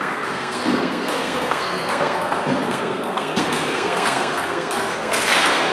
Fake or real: fake